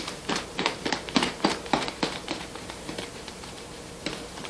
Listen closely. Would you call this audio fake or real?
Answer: fake